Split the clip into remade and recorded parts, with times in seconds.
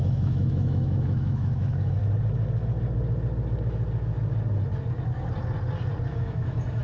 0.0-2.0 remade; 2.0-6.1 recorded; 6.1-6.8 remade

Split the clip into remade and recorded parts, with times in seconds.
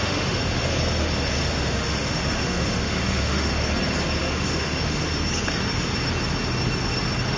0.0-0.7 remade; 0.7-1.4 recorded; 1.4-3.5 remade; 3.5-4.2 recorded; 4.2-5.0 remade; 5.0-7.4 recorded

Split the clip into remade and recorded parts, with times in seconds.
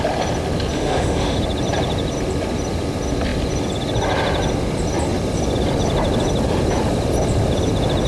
0.0-0.7 recorded; 0.7-1.4 remade; 1.4-8.1 recorded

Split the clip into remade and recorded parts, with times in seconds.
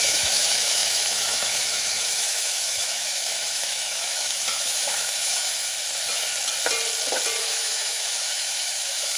0.0-5.7 remade; 5.7-7.4 recorded; 7.4-9.2 remade